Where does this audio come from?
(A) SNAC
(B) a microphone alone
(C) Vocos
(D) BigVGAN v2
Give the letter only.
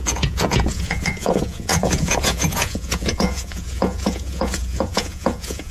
C